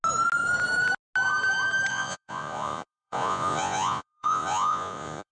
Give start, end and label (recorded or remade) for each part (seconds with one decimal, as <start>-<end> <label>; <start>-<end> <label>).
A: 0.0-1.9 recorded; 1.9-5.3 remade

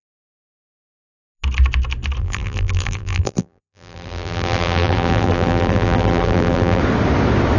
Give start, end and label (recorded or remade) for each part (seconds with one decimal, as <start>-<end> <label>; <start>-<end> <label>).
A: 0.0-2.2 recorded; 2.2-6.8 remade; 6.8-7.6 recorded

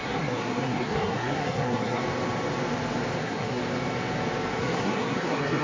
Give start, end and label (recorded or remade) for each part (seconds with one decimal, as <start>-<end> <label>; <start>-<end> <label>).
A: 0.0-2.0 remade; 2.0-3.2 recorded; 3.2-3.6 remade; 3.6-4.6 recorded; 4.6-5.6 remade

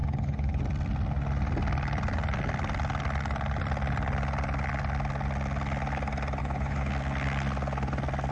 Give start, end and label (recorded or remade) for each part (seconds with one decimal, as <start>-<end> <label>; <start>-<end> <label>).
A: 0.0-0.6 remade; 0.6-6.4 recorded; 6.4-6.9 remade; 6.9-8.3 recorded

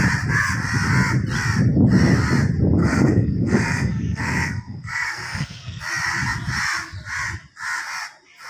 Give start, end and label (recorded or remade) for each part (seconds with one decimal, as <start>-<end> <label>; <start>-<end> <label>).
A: 0.0-2.8 recorded; 2.8-5.8 remade; 5.8-8.5 recorded